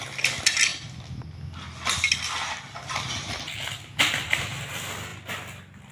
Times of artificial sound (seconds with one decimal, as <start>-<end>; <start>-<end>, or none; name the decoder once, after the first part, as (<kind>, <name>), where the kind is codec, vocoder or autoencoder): none